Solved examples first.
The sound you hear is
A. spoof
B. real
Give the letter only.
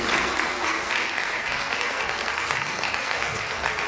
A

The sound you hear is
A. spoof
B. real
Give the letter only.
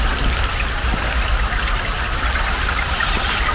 B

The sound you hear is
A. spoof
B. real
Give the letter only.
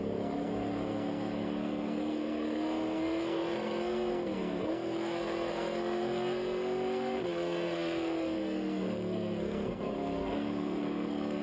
A